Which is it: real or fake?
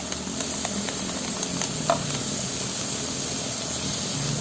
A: real